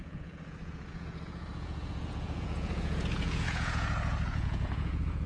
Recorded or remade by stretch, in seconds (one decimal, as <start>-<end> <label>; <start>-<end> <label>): 0.0-5.3 remade